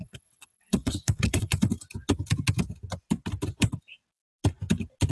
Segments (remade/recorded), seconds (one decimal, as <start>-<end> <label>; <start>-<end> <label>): 0.0-1.7 remade; 1.7-5.1 recorded